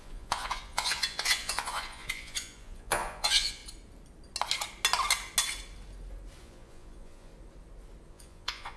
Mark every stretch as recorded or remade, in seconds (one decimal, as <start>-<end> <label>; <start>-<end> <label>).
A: 0.0-3.6 remade; 3.6-6.4 recorded; 6.4-7.3 remade; 7.3-8.1 recorded; 8.1-8.8 remade